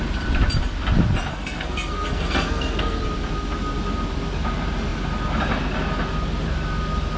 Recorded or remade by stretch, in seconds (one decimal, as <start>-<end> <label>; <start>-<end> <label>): 0.0-1.3 recorded; 1.3-3.0 remade; 3.0-7.2 recorded